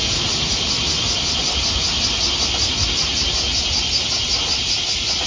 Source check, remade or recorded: recorded